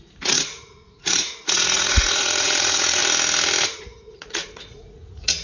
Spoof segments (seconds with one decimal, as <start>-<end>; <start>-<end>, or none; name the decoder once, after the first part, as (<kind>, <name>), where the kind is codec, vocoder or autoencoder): 0.0-3.0 (vocoder, Vocos); 3.8-5.4